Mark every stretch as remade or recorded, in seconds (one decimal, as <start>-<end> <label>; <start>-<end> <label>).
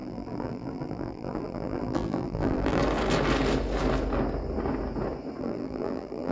0.0-2.8 remade; 2.8-5.4 recorded; 5.4-6.3 remade